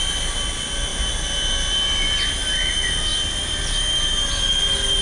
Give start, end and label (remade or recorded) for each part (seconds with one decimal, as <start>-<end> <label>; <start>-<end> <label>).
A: 0.0-0.9 recorded; 0.9-2.7 remade; 2.7-3.1 recorded; 3.1-4.4 remade; 4.4-5.0 recorded